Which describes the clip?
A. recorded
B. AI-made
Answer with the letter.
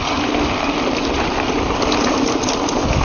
A